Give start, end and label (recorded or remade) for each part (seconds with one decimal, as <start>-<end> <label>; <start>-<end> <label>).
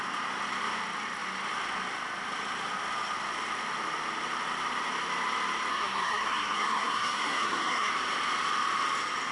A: 0.0-5.7 recorded; 5.7-7.9 remade; 7.9-9.3 recorded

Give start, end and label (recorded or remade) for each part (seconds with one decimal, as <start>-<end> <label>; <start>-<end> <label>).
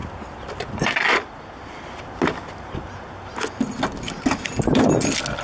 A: 0.0-5.4 recorded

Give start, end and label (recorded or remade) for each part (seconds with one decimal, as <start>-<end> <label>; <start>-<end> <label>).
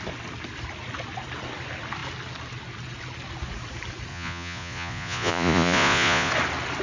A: 0.0-4.1 recorded; 4.1-6.3 remade; 6.3-6.8 recorded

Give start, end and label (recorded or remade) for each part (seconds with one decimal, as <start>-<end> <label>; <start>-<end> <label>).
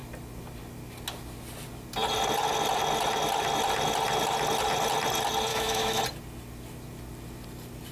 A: 0.0-5.5 recorded; 5.5-6.0 remade; 6.0-7.9 recorded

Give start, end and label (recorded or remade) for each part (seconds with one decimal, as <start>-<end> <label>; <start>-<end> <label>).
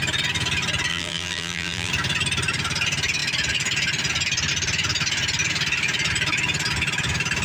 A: 0.0-0.9 recorded; 0.9-1.9 remade; 1.9-7.4 recorded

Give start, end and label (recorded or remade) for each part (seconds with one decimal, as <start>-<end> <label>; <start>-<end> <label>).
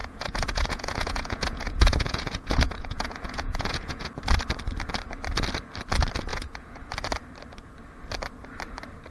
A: 0.0-4.1 remade; 4.1-6.3 recorded; 6.3-6.9 remade; 6.9-9.1 recorded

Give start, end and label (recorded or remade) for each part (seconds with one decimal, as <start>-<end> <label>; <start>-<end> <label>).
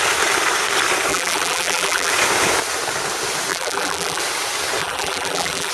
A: 0.0-1.1 recorded; 1.1-2.1 remade; 2.1-3.5 recorded; 3.5-4.2 remade; 4.2-4.8 recorded; 4.8-5.7 remade